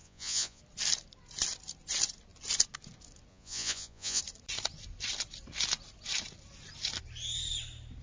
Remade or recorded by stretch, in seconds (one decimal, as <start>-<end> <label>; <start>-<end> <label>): 0.0-0.6 remade; 0.6-3.3 recorded; 3.3-4.2 remade; 4.2-8.0 recorded